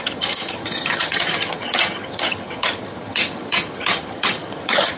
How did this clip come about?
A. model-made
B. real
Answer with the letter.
A